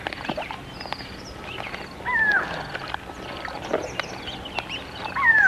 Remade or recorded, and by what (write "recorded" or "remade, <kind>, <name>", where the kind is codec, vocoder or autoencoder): recorded